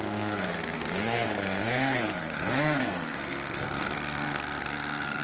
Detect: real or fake fake